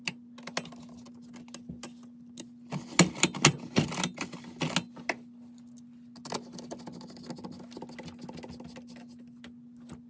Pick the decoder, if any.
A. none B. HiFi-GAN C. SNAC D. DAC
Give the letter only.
A